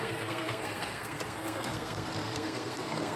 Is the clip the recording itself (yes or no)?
no